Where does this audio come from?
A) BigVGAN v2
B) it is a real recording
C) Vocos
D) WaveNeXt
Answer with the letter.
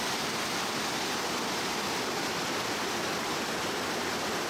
B